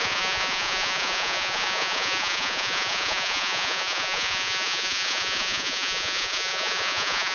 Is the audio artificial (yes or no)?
yes